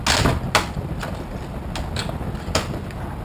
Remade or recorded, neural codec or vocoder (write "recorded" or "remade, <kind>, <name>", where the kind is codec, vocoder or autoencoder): recorded